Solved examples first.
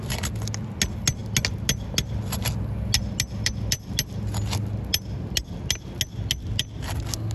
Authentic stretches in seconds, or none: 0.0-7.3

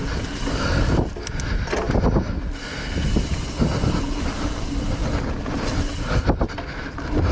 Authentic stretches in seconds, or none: 0.0-7.3

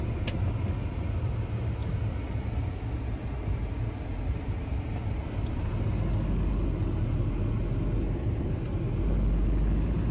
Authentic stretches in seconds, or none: 0.0-10.1

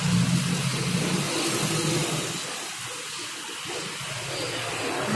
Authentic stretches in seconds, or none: 0.0-5.2